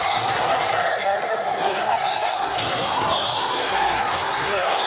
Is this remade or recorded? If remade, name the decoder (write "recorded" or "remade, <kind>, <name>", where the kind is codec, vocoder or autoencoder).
remade, codec, SNAC